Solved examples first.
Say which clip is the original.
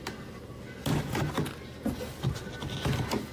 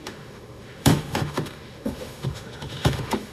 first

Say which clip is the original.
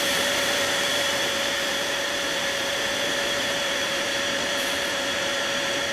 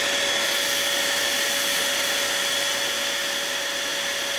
second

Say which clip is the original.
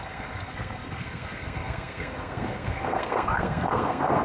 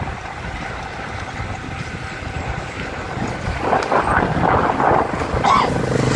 second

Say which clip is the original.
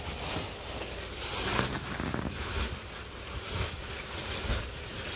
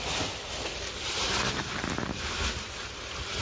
first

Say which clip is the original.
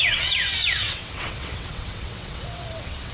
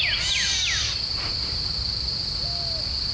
second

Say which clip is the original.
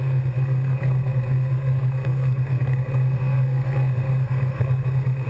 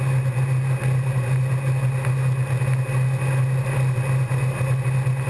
second